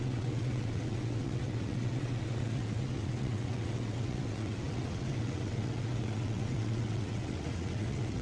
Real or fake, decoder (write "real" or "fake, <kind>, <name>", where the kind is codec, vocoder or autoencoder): fake, vocoder, WaveNeXt